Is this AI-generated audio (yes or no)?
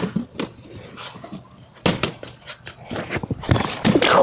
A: no